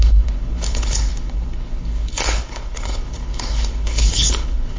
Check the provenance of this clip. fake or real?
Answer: fake